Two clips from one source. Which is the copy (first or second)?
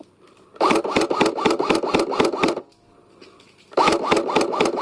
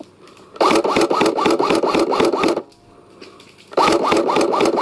second